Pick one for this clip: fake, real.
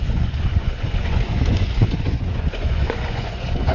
fake